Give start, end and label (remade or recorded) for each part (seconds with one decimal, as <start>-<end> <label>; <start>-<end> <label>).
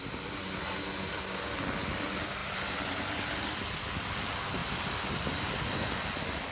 0.0-2.4 recorded; 2.4-3.9 remade; 3.9-6.5 recorded